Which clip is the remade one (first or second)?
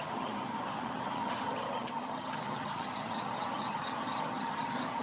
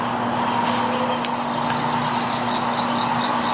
first